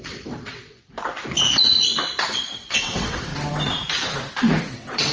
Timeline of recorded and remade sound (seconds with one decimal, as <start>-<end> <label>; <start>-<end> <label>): 0.0-0.8 remade; 0.8-2.2 recorded; 2.2-3.3 remade; 3.3-4.6 recorded; 4.6-5.1 remade